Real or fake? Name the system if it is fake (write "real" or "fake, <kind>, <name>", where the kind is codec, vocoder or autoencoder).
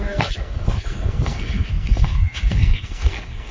fake, codec, SNAC